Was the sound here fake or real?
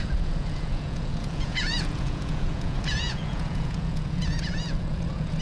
fake